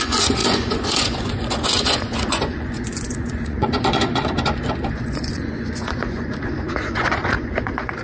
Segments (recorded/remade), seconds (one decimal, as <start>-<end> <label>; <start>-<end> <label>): 0.0-8.0 remade

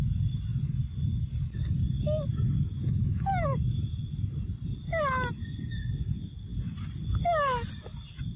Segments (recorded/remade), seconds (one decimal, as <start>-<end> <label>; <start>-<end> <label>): 0.0-8.4 recorded

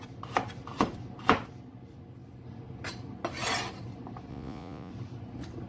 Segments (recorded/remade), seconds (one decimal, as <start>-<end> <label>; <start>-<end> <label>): 0.0-4.3 recorded; 4.3-4.9 remade; 4.9-5.7 recorded